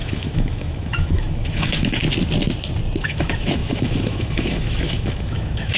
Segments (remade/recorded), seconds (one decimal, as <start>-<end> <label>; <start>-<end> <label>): 0.0-2.0 remade; 2.0-3.0 recorded; 3.0-5.8 remade